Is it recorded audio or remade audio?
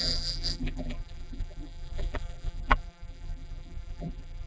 remade